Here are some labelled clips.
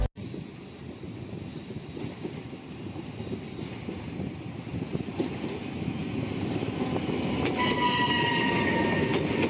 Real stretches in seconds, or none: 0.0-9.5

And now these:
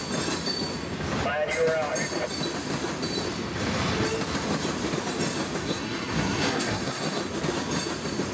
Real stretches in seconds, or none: 0.0-5.6; 7.2-8.3

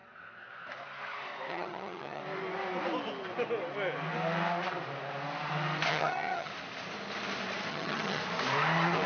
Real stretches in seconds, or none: 0.0-1.5; 2.2-5.9; 6.5-7.7; 8.2-9.1

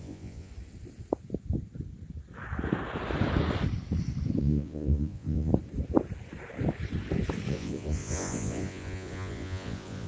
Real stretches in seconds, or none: 0.5-4.4; 5.5-7.5

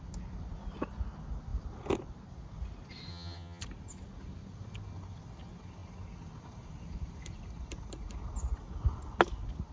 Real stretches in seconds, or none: 0.0-3.1; 3.6-9.7

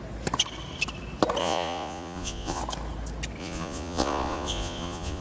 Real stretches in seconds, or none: 0.0-1.4; 2.6-3.4

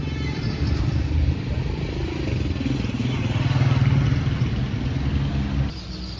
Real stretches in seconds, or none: 2.0-5.7